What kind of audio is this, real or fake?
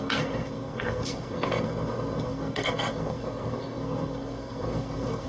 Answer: fake